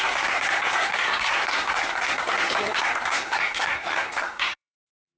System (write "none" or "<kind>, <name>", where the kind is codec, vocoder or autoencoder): codec, SNAC